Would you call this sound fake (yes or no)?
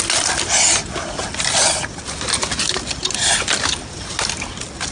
no